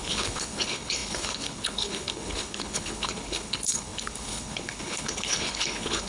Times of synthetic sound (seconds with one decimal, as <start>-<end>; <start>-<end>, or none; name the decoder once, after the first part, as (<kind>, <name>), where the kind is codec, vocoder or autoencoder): 0.0-6.1 (codec, HILCodec)